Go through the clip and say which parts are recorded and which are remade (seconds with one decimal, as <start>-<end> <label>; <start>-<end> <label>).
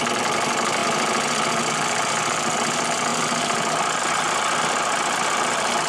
0.0-5.9 recorded